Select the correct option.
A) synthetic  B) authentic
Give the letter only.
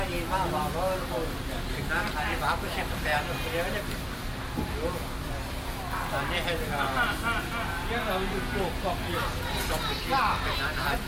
B